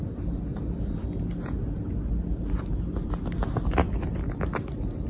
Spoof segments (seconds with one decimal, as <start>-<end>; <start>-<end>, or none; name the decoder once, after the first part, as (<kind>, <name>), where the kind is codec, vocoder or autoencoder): none